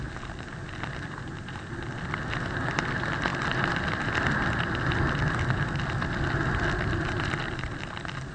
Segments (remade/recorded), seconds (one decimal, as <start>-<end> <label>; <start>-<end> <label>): 0.0-8.3 recorded